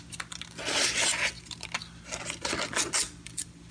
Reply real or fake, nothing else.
real